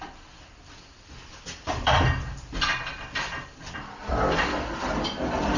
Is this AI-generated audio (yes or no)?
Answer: no